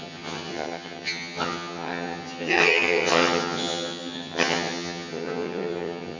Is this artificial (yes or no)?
yes